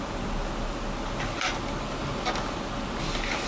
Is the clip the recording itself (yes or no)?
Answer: yes